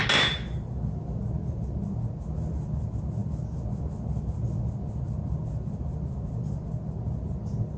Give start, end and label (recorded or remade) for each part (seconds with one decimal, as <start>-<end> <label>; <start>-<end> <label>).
0.0-7.8 recorded